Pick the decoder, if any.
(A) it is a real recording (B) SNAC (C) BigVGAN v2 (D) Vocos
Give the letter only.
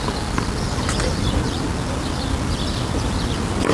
A